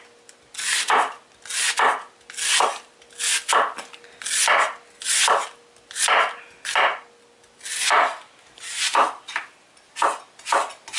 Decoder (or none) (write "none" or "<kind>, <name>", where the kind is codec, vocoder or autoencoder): none